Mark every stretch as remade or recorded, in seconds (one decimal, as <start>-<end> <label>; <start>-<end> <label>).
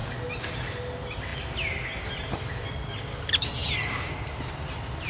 0.0-5.1 recorded